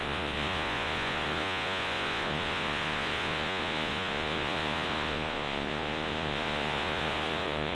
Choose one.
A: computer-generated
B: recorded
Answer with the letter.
A